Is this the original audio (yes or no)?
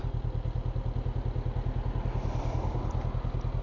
yes